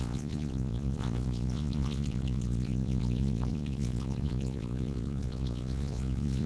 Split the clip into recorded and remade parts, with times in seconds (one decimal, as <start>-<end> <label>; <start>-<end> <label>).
0.0-6.5 remade